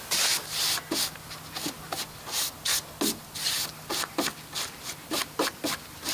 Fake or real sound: real